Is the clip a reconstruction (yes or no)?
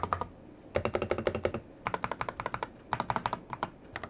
no